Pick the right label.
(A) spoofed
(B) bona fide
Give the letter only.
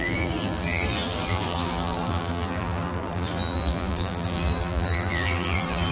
A